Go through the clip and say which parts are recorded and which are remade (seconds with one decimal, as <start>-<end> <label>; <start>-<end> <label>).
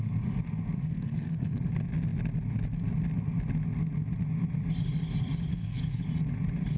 0.0-0.8 recorded; 0.8-1.7 remade; 1.7-5.5 recorded; 5.5-6.0 remade; 6.0-6.8 recorded